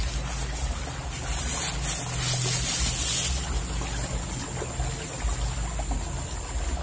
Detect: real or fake real